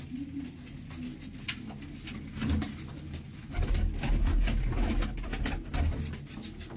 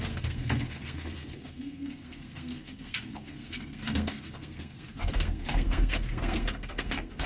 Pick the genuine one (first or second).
first